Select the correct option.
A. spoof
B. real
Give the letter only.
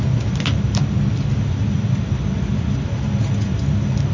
B